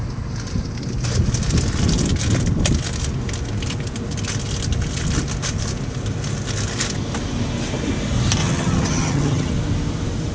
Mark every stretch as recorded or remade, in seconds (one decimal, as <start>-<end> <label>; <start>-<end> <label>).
0.0-8.4 recorded; 8.4-9.5 remade; 9.5-10.3 recorded